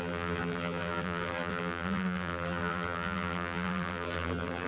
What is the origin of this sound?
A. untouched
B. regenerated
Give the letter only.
B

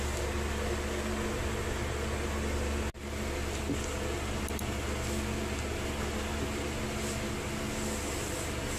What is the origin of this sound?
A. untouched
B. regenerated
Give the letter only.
A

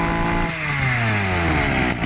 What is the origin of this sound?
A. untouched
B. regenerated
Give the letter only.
A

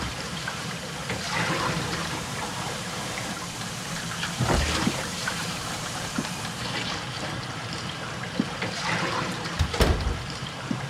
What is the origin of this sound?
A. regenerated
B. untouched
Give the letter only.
A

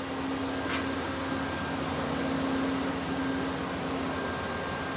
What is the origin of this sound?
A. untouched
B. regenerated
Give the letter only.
A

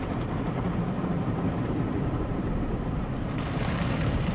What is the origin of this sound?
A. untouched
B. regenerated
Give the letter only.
B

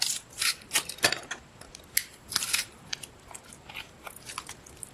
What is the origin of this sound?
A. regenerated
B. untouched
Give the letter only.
B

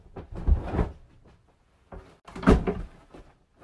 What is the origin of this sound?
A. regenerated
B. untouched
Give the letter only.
B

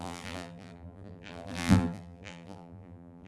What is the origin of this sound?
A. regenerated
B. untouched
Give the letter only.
A